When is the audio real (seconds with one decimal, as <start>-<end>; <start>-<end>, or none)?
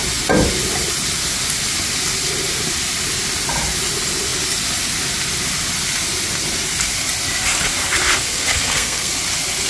0.0-8.2; 9.1-9.7